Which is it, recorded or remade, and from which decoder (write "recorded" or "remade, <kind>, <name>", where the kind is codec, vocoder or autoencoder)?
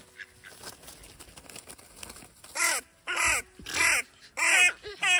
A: recorded